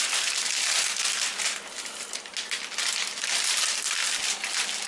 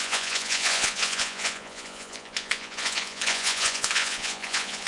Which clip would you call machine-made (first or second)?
second